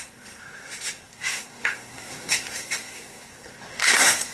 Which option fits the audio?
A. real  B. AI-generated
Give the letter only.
B